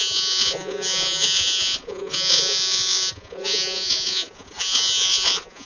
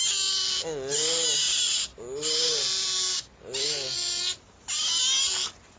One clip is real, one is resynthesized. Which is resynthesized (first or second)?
first